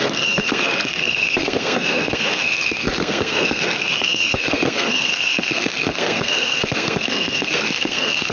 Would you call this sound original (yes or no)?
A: no